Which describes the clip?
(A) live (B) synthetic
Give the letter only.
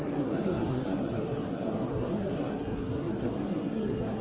B